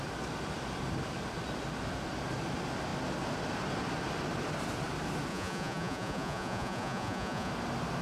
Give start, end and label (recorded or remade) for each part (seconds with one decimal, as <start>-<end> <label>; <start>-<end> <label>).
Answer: 0.0-5.3 recorded; 5.3-7.5 remade; 7.5-8.0 recorded